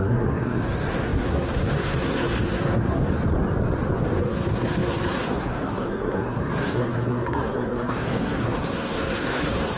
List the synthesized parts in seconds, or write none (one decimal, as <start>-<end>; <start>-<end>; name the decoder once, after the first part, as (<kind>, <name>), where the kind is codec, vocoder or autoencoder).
0.0-3.0 (codec, SNAC); 4.2-9.8